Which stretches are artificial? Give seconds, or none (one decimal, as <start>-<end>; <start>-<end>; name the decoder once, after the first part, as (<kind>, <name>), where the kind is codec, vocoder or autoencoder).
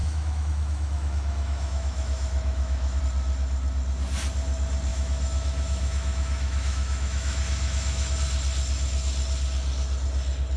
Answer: 0.0-3.0 (autoencoder, DAC-VAE); 4.9-8.2